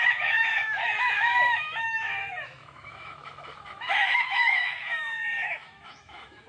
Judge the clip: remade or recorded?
remade